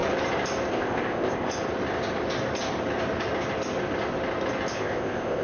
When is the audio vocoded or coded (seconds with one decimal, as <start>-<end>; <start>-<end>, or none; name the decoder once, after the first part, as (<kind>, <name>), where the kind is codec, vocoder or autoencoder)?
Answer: 0.7-1.5 (codec, ZipCodec); 4.7-5.4